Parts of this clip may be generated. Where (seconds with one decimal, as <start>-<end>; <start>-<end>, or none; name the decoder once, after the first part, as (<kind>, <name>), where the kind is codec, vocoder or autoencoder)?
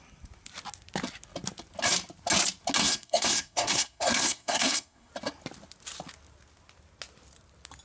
2.8-5.1 (codec, SNAC)